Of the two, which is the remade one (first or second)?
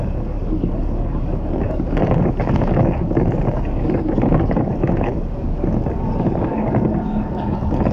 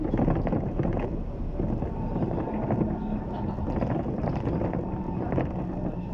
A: first